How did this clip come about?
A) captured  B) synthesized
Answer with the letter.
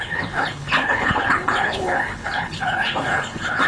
B